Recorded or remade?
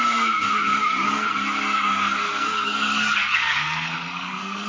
remade